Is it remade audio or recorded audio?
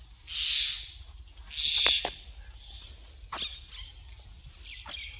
recorded